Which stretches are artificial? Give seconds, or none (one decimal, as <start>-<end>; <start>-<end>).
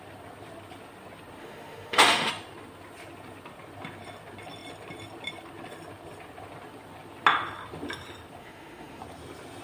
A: 1.4-2.3; 8.4-9.0